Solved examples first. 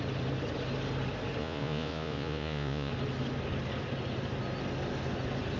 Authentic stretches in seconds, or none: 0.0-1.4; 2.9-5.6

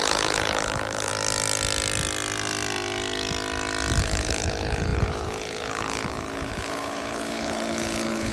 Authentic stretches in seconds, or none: 1.1-4.0

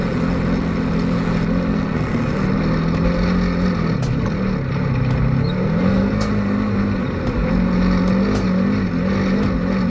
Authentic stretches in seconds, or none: 0.0-1.7; 2.3-5.6; 6.3-9.9